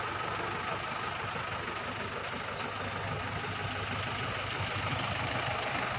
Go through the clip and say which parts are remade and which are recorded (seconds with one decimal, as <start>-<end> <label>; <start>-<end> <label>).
0.0-4.9 recorded; 4.9-5.4 remade; 5.4-6.0 recorded